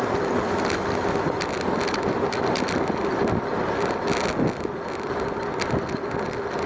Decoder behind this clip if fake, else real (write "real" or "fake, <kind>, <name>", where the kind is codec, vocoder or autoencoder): real